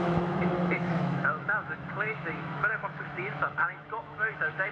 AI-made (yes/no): yes